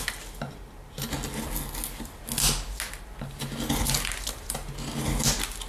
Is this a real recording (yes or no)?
yes